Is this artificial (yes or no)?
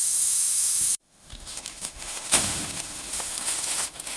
yes